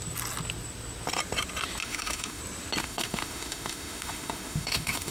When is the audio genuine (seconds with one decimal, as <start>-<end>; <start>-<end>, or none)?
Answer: 0.0-1.8; 2.4-2.8